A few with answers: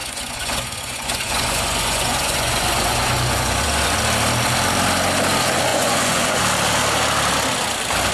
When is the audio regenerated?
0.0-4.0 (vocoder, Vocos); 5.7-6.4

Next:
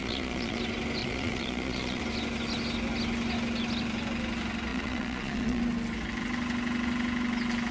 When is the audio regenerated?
0.0-0.6 (vocoder, Vocos); 1.0-2.0; 4.7-5.6

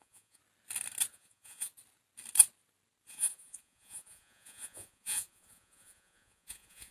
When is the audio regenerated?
0.0-0.4 (vocoder, Vocos); 1.1-1.7; 3.1-6.9

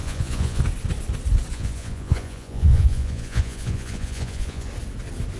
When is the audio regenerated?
0.0-0.6 (vocoder, Vocos); 1.5-4.7

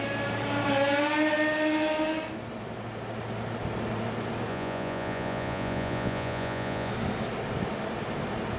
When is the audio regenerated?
4.5-6.9 (vocoder, Vocos)